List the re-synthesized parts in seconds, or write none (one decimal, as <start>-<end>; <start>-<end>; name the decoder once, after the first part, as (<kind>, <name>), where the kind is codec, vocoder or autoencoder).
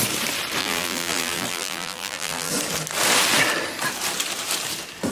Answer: 0.6-2.5 (vocoder, BigVGAN v2)